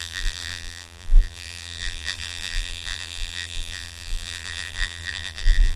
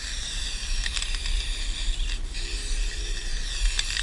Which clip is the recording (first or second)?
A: second